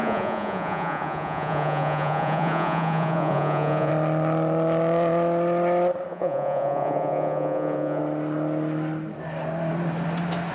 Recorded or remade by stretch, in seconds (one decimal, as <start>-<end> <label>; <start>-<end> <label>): 0.0-3.9 remade; 3.9-6.1 recorded; 6.1-8.0 remade; 8.0-10.5 recorded